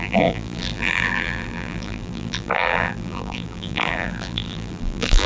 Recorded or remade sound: remade